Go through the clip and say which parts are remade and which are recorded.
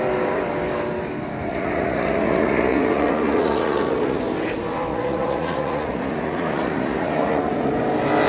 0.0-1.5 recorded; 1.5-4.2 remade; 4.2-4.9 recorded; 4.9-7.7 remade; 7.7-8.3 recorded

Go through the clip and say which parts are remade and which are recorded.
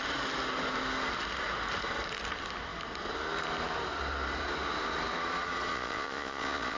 0.0-5.7 recorded; 5.7-6.8 remade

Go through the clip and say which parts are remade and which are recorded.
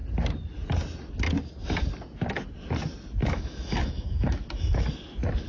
0.0-3.2 recorded; 3.2-4.8 remade; 4.8-5.5 recorded